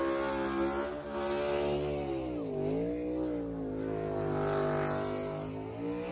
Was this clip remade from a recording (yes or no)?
no